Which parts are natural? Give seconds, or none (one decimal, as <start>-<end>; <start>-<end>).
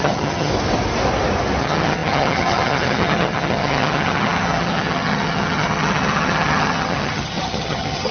0.5-1.6